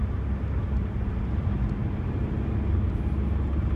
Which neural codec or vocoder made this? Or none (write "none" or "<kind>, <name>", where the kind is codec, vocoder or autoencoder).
none